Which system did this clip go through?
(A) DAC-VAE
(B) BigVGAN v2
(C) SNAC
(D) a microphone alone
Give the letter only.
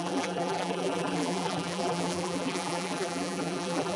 B